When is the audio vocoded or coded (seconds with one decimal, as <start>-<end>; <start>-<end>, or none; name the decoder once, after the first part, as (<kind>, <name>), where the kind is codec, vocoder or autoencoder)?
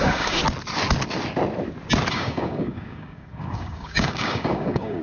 0.0-0.4 (codec, DAC); 2.1-5.0